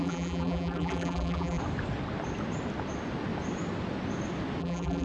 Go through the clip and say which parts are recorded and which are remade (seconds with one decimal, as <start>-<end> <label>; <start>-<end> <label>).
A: 0.0-1.6 remade; 1.6-4.6 recorded; 4.6-5.0 remade